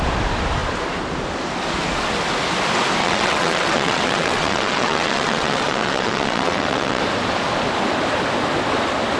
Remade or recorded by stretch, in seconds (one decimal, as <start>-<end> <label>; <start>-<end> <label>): 0.0-3.0 recorded; 3.0-7.0 remade; 7.0-9.2 recorded